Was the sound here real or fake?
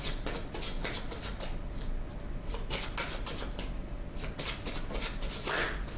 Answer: real